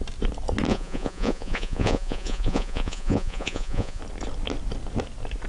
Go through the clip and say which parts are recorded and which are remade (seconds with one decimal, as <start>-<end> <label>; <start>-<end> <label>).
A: 0.0-0.7 recorded; 0.7-4.0 remade; 4.0-5.5 recorded